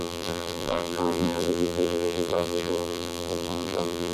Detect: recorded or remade remade